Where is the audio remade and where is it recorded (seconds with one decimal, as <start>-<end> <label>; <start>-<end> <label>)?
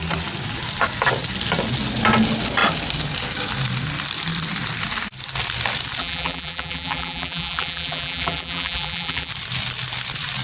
0.0-6.0 recorded; 6.0-9.3 remade; 9.3-10.4 recorded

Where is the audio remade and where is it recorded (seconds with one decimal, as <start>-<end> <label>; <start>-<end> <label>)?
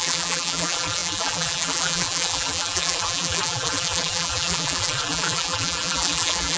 0.0-6.6 remade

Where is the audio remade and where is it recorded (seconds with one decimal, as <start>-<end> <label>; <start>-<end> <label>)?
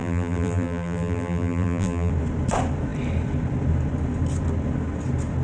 0.0-2.1 remade; 2.1-5.4 recorded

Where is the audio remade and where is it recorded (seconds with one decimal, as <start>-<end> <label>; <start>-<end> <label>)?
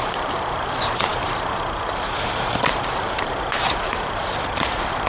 0.0-5.1 remade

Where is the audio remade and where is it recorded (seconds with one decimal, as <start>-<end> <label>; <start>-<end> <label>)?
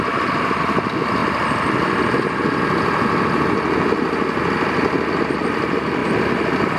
0.0-1.2 remade; 1.2-5.3 recorded; 5.3-6.8 remade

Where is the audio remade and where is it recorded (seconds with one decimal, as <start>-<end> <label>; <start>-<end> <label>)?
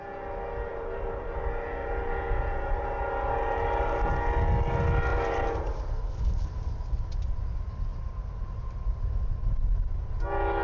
0.0-0.7 recorded; 0.7-1.3 remade; 1.3-1.8 recorded; 1.8-4.1 remade; 4.1-5.1 recorded; 5.1-5.9 remade; 5.9-7.9 recorded; 7.9-8.9 remade; 8.9-10.6 recorded